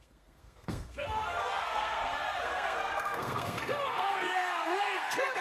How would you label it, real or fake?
fake